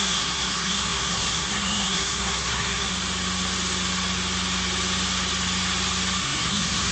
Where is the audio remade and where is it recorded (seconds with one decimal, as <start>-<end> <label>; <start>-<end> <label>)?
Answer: 0.0-2.9 remade; 2.9-6.2 recorded; 6.2-6.9 remade